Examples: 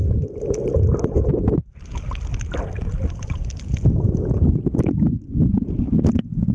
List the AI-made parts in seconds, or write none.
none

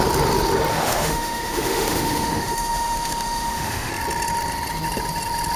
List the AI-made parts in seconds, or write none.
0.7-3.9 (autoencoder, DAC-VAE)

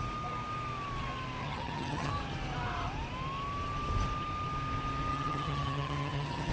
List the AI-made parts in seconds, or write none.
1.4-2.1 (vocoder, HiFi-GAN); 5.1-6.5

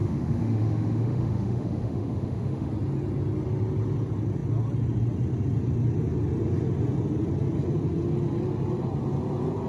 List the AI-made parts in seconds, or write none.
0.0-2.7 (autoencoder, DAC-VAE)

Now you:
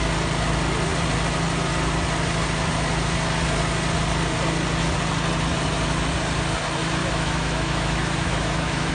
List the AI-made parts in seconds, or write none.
7.0-8.9 (autoencoder, DAC-VAE)

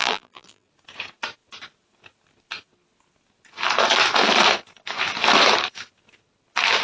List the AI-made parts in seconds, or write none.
0.0-0.7 (vocoder, BigVGAN v2)

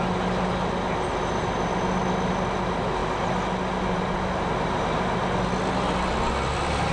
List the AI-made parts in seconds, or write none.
none